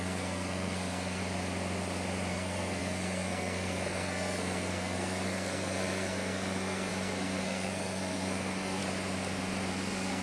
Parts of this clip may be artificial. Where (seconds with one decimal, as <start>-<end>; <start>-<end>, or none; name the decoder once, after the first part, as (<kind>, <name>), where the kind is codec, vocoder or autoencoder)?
0.0-1.2 (codec, SNAC); 2.3-8.8; 9.7-10.2